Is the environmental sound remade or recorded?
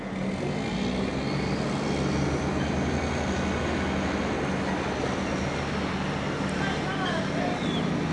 recorded